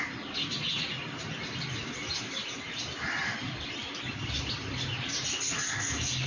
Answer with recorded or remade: recorded